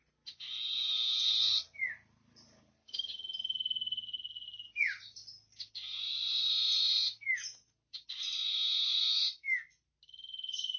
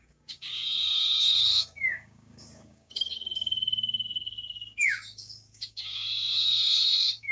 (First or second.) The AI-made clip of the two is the second